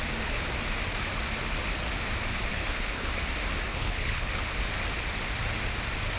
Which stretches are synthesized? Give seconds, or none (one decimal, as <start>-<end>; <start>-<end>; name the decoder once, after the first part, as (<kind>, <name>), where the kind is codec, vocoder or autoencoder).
2.5-3.1 (codec, HILCodec); 3.7-4.3

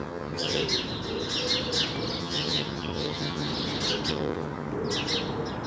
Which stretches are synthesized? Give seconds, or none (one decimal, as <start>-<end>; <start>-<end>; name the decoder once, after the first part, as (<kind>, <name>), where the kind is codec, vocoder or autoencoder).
0.0-0.6 (vocoder, HiFi-GAN); 2.2-3.5; 4.1-4.7

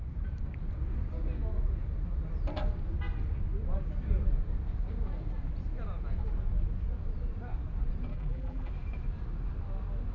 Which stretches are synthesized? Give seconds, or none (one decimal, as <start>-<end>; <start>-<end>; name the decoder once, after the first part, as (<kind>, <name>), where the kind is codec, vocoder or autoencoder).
8.1-8.7 (vocoder, BigVGAN v2)

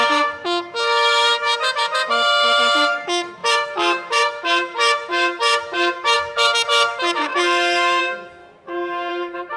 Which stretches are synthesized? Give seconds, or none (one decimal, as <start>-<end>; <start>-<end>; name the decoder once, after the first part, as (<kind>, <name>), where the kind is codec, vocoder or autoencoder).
0.0-8.4 (autoencoder, DAC-VAE); 9.1-9.6

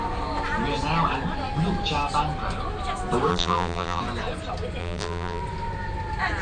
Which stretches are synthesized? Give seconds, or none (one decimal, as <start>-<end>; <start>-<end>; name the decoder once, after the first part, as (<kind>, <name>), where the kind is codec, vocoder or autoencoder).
3.3-4.0 (vocoder, BigVGAN v2); 4.8-5.4

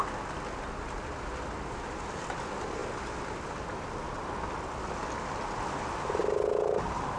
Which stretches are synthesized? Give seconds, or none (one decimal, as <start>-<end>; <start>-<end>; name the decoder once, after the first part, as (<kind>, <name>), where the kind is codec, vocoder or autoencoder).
none